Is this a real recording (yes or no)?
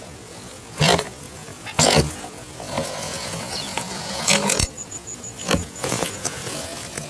no